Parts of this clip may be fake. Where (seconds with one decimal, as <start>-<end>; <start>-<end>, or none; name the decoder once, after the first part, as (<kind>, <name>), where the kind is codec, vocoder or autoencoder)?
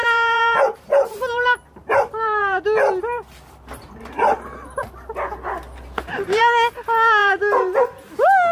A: 0.0-3.0 (vocoder, BigVGAN v2); 7.2-7.8